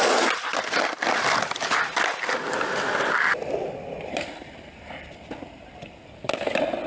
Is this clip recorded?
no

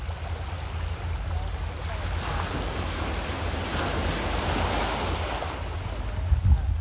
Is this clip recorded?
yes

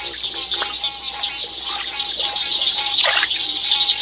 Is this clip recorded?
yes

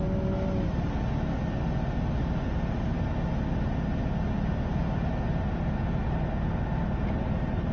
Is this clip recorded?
yes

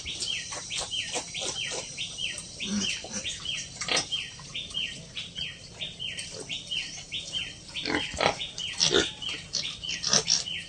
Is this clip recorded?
no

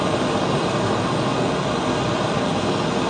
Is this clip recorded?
yes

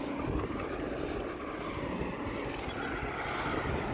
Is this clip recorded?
yes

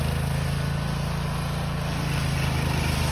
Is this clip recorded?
yes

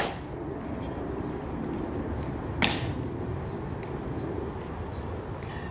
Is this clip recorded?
yes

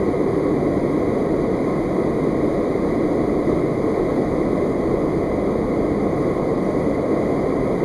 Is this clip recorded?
yes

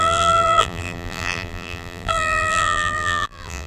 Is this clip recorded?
no